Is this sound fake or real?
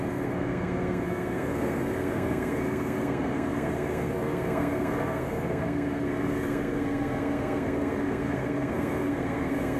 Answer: fake